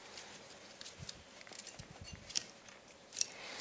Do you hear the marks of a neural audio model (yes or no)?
yes